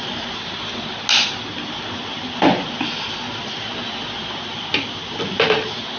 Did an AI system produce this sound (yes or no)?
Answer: no